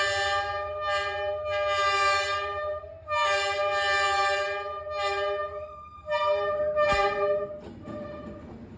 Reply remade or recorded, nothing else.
recorded